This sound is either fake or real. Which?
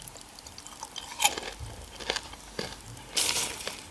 real